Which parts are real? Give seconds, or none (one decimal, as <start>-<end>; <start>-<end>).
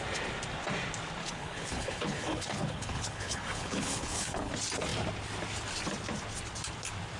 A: 0.0-1.2; 4.5-7.2